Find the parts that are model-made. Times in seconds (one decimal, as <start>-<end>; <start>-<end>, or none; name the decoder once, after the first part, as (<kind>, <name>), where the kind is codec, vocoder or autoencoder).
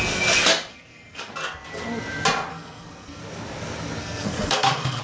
0.7-1.3 (codec, SNAC); 2.5-3.2; 4.0-5.0